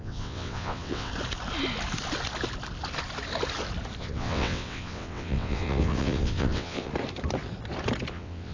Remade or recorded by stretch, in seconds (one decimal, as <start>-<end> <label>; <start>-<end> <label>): 0.0-1.1 remade; 1.1-4.0 recorded; 4.0-6.9 remade; 6.9-8.1 recorded; 8.1-8.5 remade